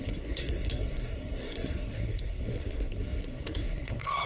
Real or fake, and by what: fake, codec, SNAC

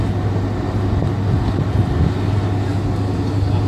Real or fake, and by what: real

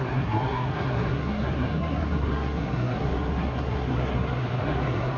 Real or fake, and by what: fake, codec, SNAC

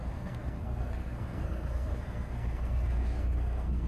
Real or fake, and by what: fake, codec, SNAC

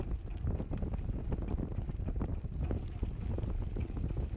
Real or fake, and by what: real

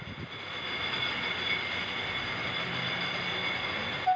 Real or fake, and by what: real